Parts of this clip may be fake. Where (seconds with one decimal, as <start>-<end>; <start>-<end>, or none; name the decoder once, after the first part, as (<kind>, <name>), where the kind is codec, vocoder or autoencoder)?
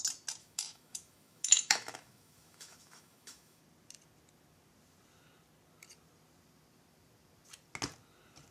0.4-3.6 (autoencoder, DAC-VAE)